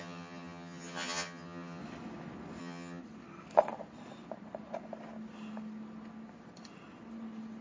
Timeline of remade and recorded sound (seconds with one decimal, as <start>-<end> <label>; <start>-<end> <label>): 0.0-1.8 remade; 1.8-2.6 recorded; 2.6-3.0 remade; 3.0-7.6 recorded